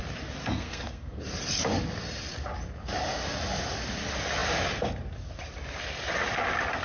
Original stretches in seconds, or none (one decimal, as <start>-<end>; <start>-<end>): 0.0-0.4; 1.2-6.8